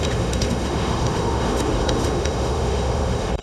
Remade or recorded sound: remade